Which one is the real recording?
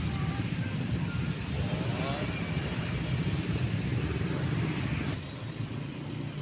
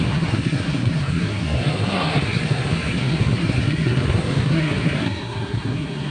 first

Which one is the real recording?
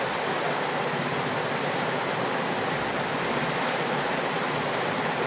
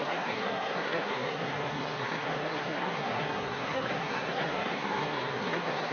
first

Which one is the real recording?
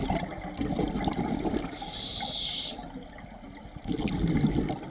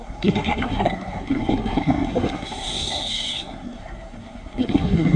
first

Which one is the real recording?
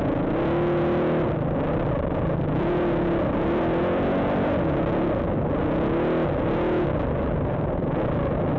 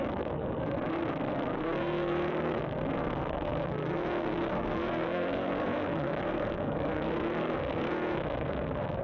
first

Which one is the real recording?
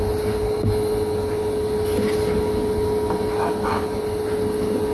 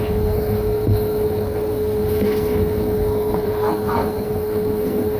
first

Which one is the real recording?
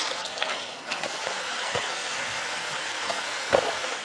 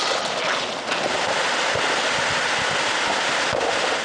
second